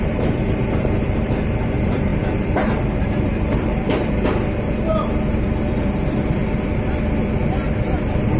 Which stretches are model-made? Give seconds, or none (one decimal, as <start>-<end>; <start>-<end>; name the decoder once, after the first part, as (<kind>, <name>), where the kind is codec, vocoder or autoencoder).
0.0-6.4 (vocoder, BigVGAN v2)